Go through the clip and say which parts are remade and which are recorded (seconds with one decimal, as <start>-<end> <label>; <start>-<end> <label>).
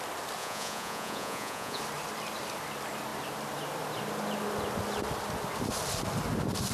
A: 0.0-0.4 recorded; 0.4-1.8 remade; 1.8-6.7 recorded